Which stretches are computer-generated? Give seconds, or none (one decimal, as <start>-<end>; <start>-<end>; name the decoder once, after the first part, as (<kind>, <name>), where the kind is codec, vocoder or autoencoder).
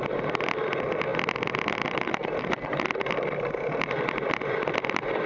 none